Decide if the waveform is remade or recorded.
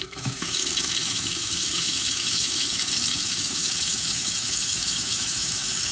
remade